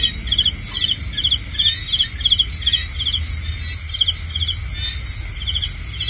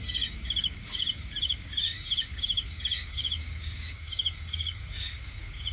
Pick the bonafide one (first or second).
first